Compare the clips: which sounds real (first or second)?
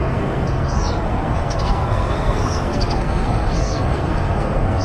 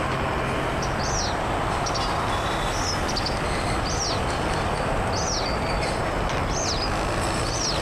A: second